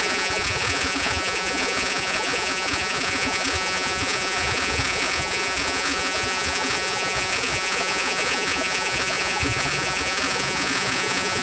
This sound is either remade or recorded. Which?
remade